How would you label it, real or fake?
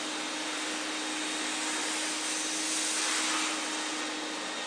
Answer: real